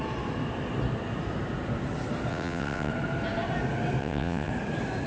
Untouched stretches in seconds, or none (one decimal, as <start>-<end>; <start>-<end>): 0.0-2.3; 2.9-4.0; 4.5-5.1